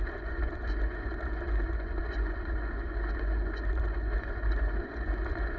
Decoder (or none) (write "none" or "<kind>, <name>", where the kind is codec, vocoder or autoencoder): vocoder, Vocos